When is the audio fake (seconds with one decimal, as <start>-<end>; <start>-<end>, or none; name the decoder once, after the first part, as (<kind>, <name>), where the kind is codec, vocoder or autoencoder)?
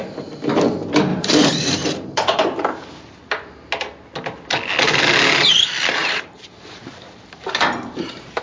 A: 1.1-3.0 (vocoder, BigVGAN v2); 6.0-8.0